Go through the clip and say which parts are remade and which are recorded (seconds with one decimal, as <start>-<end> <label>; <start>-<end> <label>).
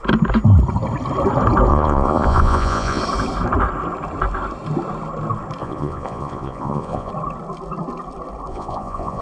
0.0-1.7 recorded; 1.7-3.0 remade; 3.0-5.6 recorded; 5.6-7.1 remade; 7.1-8.5 recorded; 8.5-9.2 remade